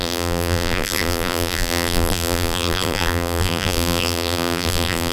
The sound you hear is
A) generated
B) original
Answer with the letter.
A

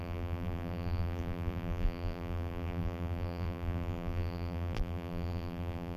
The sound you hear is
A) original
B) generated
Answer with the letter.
B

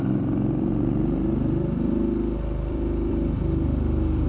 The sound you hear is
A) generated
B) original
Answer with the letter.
A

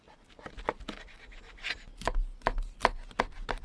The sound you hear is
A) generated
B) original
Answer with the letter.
B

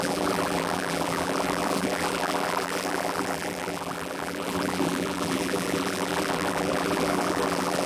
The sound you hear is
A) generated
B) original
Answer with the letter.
A